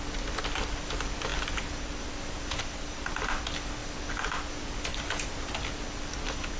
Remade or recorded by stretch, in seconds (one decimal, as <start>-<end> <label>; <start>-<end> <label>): 0.0-6.6 recorded